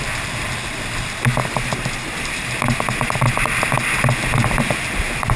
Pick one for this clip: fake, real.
real